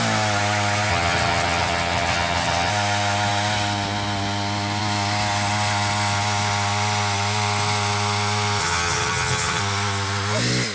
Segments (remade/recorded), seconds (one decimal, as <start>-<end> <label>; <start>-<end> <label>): 0.0-0.9 recorded; 0.9-2.7 remade; 2.7-8.6 recorded; 8.6-9.6 remade; 9.6-10.7 recorded